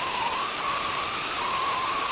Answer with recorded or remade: recorded